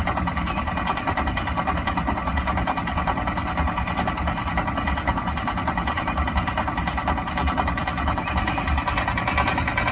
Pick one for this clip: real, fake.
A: real